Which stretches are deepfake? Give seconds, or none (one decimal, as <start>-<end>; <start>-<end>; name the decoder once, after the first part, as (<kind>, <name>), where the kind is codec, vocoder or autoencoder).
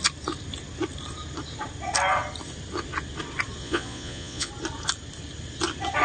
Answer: 3.6-4.5 (vocoder, Vocos)